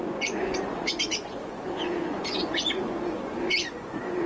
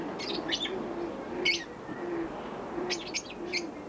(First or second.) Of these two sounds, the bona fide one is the second